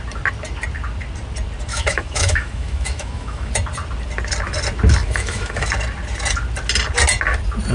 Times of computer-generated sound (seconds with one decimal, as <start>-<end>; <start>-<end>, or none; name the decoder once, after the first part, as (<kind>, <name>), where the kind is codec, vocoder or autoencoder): 1.7-3.5 (autoencoder, DAC-VAE); 5.0-5.7